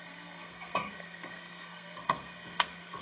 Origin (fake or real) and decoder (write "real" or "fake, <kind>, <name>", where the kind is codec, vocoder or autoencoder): fake, codec, SNAC